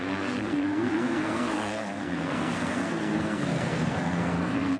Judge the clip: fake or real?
fake